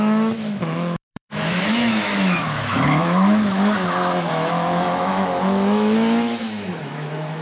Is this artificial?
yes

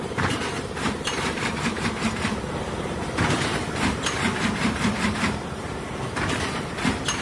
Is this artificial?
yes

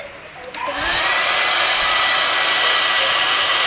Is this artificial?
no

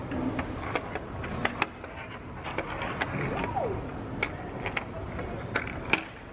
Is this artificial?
no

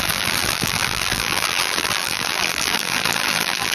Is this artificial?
yes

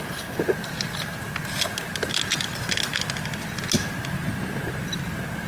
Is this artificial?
no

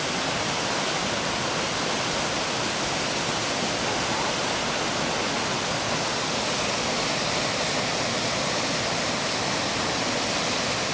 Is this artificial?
no